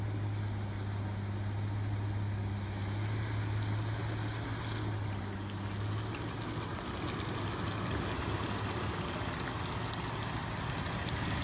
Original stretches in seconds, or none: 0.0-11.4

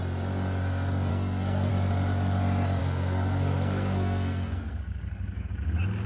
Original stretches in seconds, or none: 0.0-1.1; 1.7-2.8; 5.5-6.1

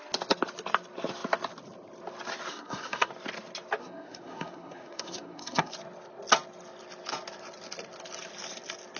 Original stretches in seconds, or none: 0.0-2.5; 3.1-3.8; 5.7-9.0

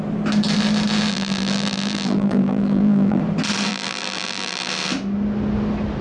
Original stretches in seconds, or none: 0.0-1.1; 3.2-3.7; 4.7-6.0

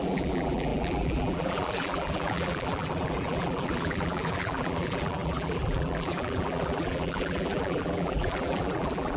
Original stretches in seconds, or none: none